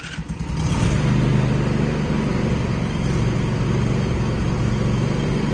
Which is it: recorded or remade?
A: recorded